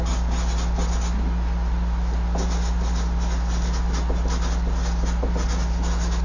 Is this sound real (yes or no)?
yes